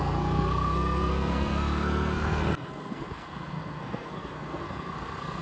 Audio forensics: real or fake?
fake